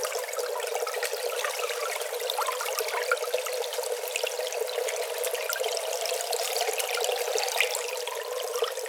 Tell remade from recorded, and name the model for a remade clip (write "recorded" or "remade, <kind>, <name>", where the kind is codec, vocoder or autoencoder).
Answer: recorded